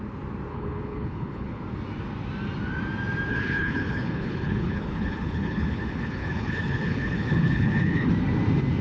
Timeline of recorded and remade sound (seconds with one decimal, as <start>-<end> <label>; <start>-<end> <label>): 0.0-0.5 recorded; 0.5-1.6 remade; 1.6-3.3 recorded; 3.3-8.1 remade; 8.1-8.8 recorded